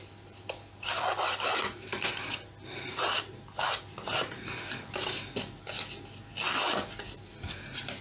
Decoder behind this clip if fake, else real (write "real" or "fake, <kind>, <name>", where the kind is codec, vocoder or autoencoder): real